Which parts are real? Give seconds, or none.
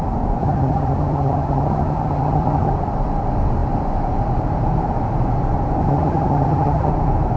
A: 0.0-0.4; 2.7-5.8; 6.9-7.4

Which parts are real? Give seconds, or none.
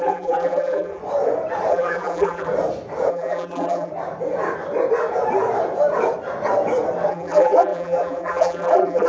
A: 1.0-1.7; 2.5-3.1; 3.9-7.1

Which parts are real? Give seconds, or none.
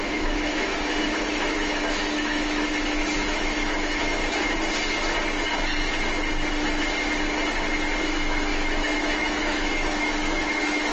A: 4.2-8.0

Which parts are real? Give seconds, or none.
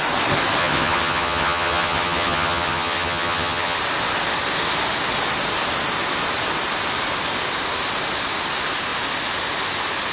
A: 0.0-0.6; 3.8-10.1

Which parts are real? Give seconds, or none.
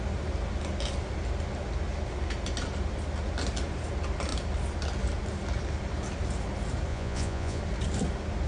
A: 0.0-6.9; 7.6-8.5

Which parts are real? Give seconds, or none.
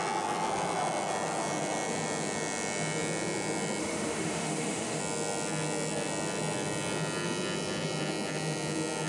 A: 0.0-3.8; 5.0-9.1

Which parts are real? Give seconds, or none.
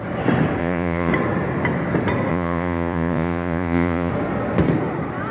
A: 0.0-0.6; 1.1-2.3; 4.1-5.3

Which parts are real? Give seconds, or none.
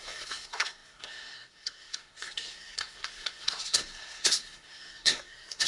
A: none